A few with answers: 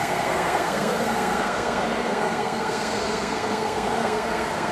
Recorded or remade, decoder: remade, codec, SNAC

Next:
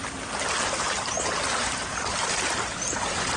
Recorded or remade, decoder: recorded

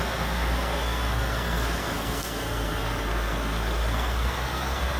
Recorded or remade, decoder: remade, codec, SNAC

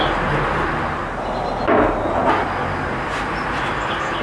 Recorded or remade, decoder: recorded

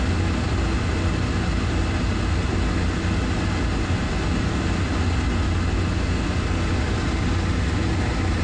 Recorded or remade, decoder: recorded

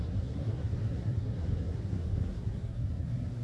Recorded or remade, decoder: remade, codec, SNAC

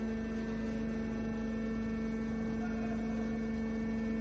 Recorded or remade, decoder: recorded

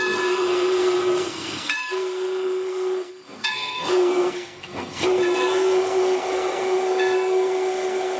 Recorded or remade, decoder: remade, codec, SNAC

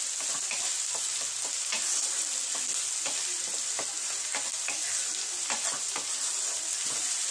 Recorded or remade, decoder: recorded